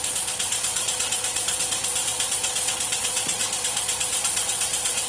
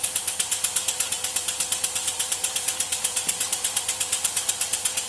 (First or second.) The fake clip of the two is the first